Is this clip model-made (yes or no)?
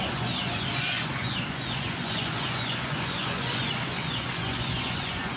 yes